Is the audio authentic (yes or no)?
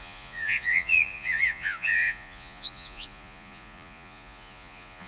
no